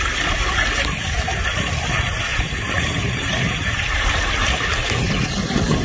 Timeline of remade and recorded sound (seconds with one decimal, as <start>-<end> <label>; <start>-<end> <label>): 0.0-2.3 recorded; 2.3-4.3 remade; 4.3-5.8 recorded